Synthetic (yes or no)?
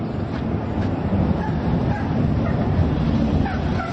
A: no